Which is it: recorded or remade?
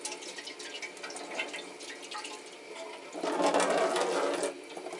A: recorded